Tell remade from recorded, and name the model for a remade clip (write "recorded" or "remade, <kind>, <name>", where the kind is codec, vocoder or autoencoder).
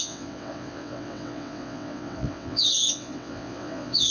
remade, vocoder, WaveNeXt